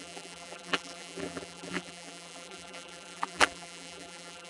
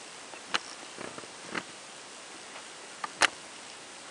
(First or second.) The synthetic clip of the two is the first